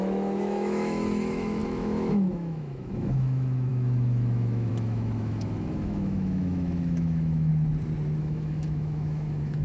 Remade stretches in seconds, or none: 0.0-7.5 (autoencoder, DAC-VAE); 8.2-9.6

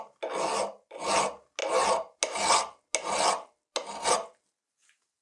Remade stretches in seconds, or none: none

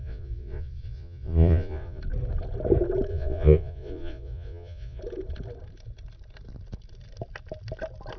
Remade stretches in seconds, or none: 0.0-2.0 (vocoder, Vocos); 3.1-5.0

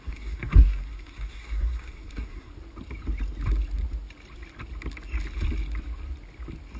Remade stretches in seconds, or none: 0.0-2.5 (codec, SNAC)